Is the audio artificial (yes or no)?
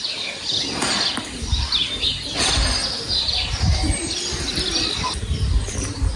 no